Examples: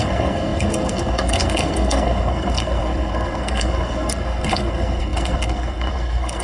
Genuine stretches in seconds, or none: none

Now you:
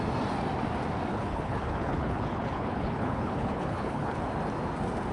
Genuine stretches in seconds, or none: 0.0-1.1; 4.2-5.1

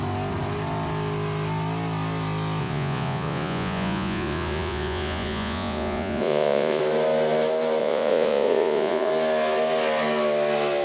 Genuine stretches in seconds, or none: 0.0-2.6; 6.8-7.8; 9.1-10.8

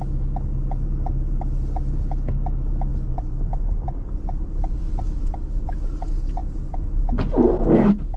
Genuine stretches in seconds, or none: 0.0-2.9; 5.7-8.2

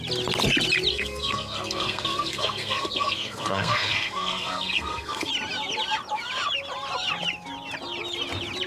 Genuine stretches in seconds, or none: 0.0-0.9; 5.3-8.7

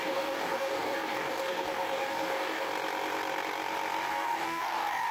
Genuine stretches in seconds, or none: 2.7-4.1

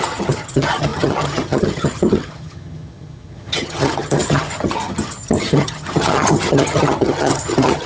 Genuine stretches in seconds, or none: none

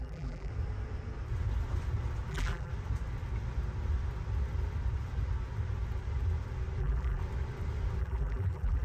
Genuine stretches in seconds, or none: 0.5-2.3; 2.7-6.8; 7.2-8.0